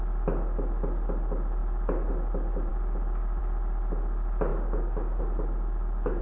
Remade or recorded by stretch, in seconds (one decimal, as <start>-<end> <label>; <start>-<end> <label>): 0.0-4.5 recorded; 4.5-5.2 remade; 5.2-6.2 recorded